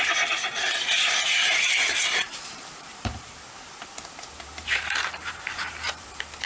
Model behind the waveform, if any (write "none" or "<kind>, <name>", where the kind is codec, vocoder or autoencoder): vocoder, BigVGAN v2